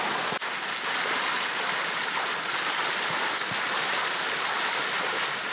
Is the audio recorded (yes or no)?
yes